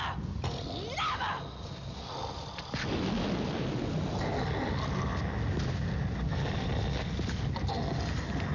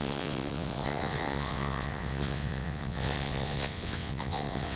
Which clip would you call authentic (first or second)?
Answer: first